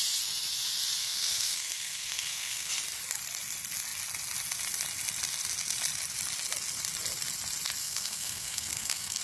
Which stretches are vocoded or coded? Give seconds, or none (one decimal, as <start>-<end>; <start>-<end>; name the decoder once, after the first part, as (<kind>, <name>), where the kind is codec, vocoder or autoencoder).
1.0-2.7 (codec, SNAC); 7.8-9.2